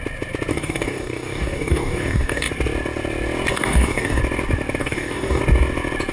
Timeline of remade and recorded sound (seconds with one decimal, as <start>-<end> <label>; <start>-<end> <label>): 0.0-0.5 recorded; 0.5-2.5 remade; 2.5-3.5 recorded; 3.5-4.2 remade; 4.2-4.8 recorded; 4.8-5.4 remade; 5.4-6.1 recorded